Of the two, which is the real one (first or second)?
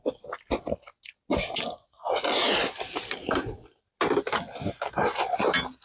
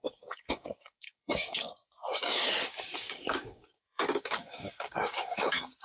first